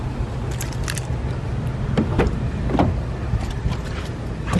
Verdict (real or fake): real